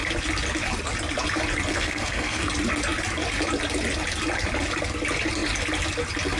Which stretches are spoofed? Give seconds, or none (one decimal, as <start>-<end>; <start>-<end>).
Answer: 1.7-2.5